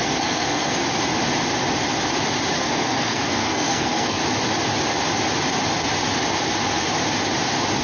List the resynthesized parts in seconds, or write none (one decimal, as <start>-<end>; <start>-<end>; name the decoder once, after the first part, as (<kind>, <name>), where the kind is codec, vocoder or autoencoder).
0.0-0.8 (codec, SNAC); 2.6-4.2